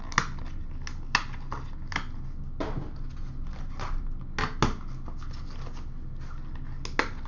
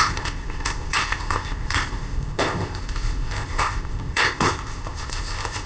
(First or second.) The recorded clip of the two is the first